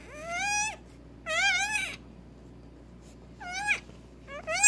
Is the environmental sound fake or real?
real